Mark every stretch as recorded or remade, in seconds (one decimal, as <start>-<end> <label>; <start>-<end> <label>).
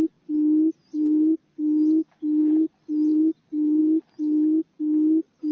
0.0-5.5 recorded